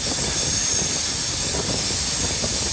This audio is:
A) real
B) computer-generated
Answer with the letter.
A